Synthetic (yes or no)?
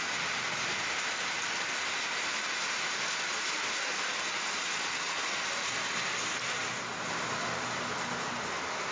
no